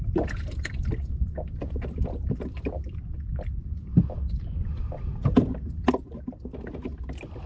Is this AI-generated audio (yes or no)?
yes